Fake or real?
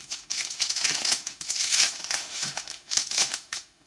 fake